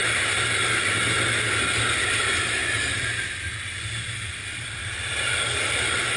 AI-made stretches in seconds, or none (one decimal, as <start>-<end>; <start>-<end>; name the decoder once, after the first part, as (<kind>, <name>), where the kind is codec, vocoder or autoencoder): 1.8-6.2 (vocoder, BigVGAN v2)